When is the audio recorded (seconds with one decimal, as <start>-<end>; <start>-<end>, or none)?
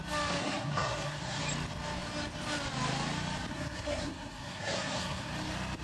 0.0-0.4; 1.4-3.5; 5.3-5.8